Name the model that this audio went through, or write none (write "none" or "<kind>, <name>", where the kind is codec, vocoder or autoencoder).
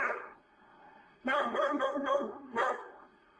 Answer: codec, SNAC